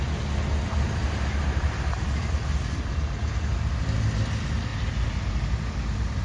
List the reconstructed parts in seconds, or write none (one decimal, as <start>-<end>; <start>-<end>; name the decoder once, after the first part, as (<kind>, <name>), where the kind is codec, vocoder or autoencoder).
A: 1.0-2.4 (vocoder, BigVGAN v2); 4.7-5.3